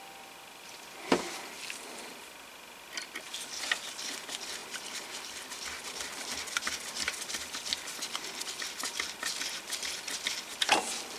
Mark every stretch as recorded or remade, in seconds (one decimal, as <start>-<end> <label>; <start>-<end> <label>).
0.0-11.2 recorded